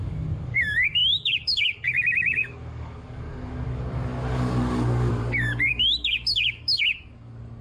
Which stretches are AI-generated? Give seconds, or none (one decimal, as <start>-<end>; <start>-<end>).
0.0-7.6

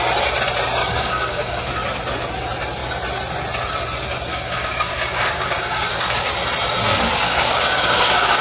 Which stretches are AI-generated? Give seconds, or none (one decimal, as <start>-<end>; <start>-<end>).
0.8-1.7; 4.3-6.3; 6.9-8.4

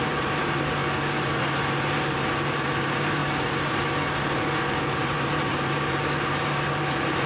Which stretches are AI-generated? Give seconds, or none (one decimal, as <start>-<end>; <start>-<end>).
0.0-0.8; 1.4-3.2; 4.2-7.3

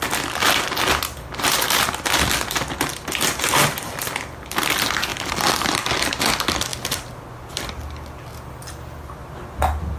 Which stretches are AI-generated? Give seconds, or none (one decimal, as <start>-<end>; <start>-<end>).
2.9-3.9